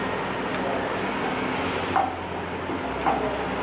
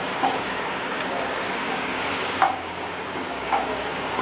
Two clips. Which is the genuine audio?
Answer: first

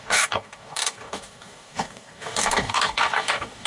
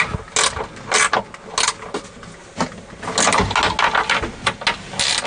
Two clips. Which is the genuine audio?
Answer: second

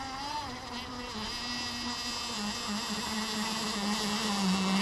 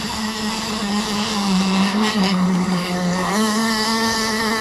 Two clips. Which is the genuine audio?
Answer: first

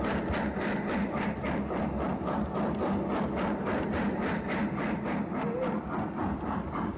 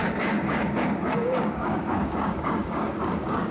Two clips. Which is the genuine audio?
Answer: first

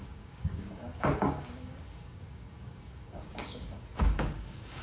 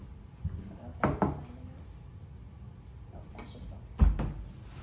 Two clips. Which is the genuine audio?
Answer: second